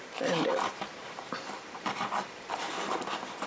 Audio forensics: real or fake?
fake